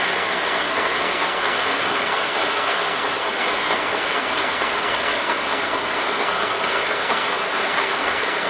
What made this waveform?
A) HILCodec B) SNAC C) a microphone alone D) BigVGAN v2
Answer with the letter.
B